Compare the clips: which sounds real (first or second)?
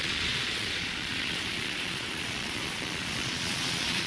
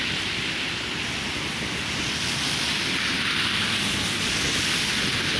second